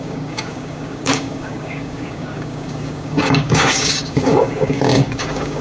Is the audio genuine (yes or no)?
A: no